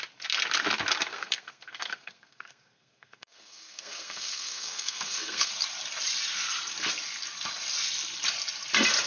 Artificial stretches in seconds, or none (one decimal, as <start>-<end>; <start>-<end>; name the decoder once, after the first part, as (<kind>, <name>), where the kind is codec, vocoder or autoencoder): 1.1-5.5 (codec, SNAC)